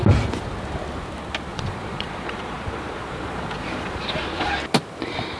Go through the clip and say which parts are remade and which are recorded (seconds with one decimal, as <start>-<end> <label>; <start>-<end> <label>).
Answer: 0.0-1.5 recorded; 1.5-4.5 remade; 4.5-5.4 recorded

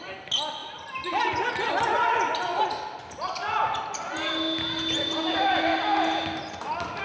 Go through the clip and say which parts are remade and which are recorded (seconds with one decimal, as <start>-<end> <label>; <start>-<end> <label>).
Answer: 0.0-7.0 recorded

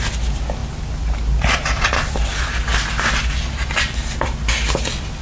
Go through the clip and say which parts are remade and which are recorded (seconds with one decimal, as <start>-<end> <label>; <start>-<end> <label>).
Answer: 0.0-5.2 recorded

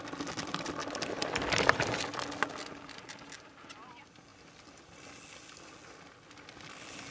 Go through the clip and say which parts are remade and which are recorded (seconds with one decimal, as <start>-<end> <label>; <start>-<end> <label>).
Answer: 0.0-7.1 recorded

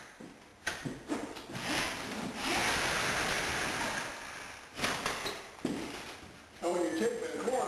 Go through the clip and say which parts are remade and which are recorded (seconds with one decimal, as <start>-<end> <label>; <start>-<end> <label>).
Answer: 0.0-7.7 recorded

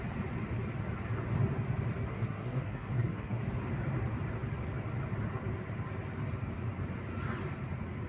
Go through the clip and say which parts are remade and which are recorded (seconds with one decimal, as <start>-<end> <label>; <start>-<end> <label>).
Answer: 0.0-2.1 recorded; 2.1-3.4 remade; 3.4-8.1 recorded

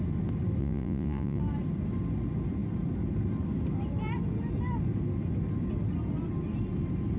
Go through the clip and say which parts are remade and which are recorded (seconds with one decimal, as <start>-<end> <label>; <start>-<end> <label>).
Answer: 0.0-0.6 recorded; 0.6-1.4 remade; 1.4-7.2 recorded